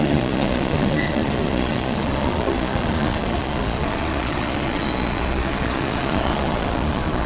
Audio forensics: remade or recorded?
remade